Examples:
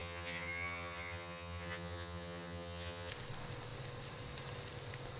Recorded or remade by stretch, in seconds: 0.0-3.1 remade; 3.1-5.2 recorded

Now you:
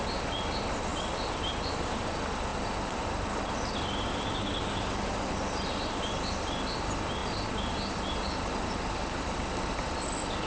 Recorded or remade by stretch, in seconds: 0.0-10.5 recorded